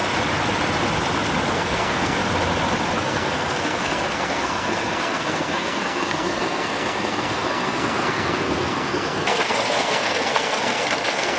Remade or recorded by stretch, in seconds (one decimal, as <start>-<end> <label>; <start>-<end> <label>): 0.0-1.5 recorded; 1.5-2.2 remade; 2.2-3.0 recorded; 3.0-11.4 remade